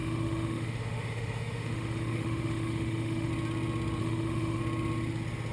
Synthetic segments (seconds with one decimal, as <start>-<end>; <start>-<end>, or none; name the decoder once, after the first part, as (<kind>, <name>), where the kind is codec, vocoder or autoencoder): 0.0-3.3 (autoencoder, DAC-VAE); 4.0-4.6